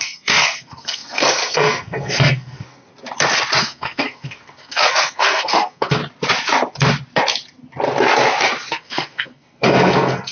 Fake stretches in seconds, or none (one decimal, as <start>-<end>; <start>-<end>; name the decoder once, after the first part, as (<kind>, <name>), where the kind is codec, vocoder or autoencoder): 0.0-2.9 (codec, SNAC); 3.6-6.0; 8.7-10.3